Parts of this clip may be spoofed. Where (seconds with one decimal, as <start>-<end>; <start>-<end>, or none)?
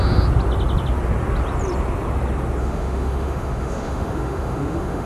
2.6-5.1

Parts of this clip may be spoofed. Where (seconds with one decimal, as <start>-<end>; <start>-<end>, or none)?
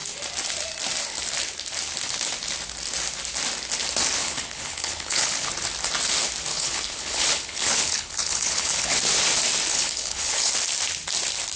4.2-5.5; 6.5-9.0; 9.7-10.5